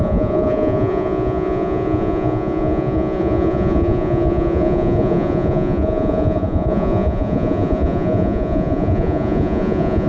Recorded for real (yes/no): no